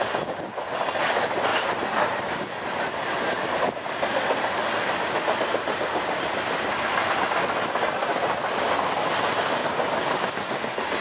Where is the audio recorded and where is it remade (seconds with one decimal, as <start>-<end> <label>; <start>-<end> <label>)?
0.0-1.5 recorded; 1.5-3.6 remade; 3.6-11.0 recorded